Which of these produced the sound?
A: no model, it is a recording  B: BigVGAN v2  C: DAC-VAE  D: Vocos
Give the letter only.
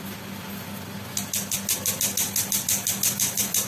A